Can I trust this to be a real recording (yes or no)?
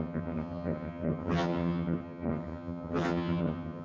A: no